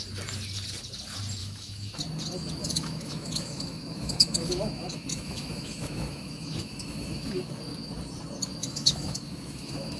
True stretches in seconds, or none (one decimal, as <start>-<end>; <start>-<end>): 0.0-1.4; 2.0-2.6; 7.6-8.6